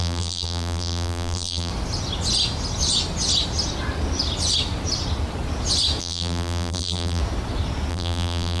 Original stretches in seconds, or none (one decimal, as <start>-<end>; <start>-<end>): 1.7-6.0; 7.2-7.9